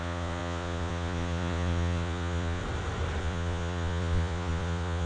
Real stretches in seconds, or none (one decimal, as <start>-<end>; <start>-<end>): 2.6-3.2